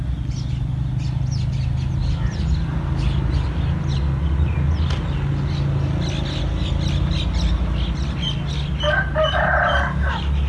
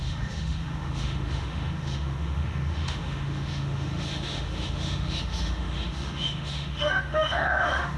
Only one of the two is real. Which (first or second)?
first